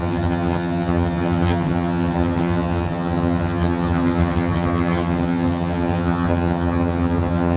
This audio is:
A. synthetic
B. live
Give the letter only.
A